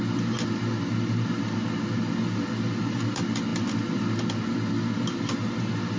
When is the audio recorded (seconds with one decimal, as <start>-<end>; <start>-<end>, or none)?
0.0-6.0